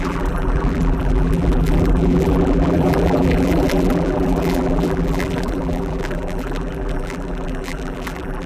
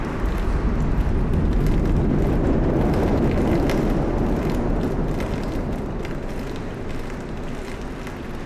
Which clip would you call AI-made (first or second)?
first